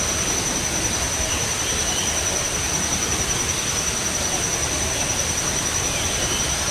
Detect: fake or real real